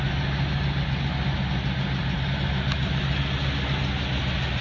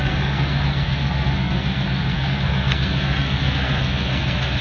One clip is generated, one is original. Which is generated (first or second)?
second